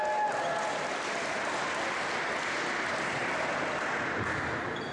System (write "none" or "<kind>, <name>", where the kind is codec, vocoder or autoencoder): none